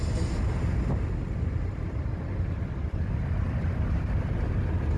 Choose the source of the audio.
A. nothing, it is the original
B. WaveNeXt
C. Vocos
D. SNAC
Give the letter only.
A